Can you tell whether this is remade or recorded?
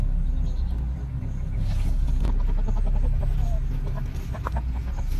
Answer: recorded